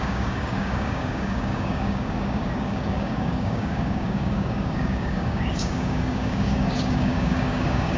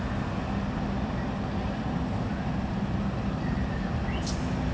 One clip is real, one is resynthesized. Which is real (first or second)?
second